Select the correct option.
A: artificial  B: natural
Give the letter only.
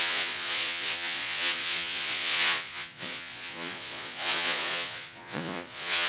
A